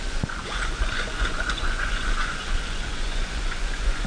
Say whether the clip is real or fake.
fake